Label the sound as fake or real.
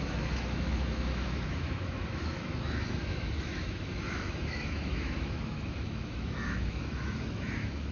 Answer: fake